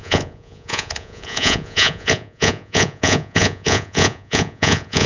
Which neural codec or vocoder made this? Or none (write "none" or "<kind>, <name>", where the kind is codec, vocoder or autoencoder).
vocoder, Vocos